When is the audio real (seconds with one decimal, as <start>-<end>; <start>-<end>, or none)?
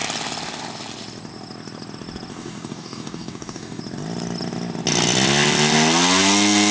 0.0-2.3; 3.8-6.7